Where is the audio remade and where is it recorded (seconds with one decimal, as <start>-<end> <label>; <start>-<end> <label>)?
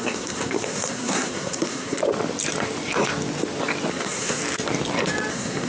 0.0-2.0 remade; 2.0-3.9 recorded; 3.9-4.4 remade; 4.4-5.3 recorded; 5.3-5.7 remade